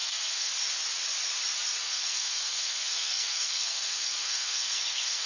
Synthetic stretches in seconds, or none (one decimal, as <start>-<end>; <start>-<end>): 0.0-0.5; 1.8-5.3

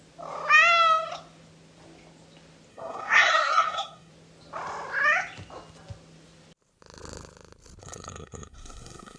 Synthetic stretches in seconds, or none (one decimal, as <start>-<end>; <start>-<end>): 2.7-4.1; 7.8-9.2